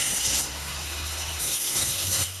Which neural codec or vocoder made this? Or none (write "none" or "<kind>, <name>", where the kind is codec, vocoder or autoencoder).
codec, SNAC